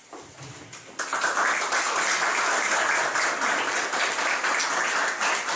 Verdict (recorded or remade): recorded